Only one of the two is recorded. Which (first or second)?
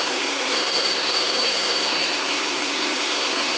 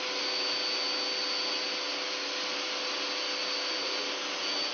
second